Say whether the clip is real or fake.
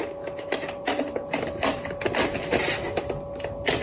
real